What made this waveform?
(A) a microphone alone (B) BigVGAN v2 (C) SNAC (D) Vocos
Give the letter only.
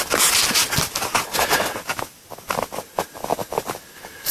A